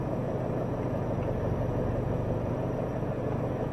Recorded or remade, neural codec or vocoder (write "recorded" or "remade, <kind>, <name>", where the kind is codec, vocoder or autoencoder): remade, vocoder, Vocos